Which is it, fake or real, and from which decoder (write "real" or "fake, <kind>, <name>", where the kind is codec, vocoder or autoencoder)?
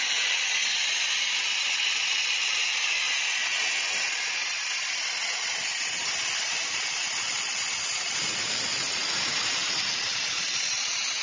real